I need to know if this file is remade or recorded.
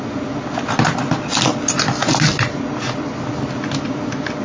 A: recorded